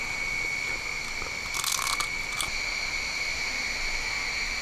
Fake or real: real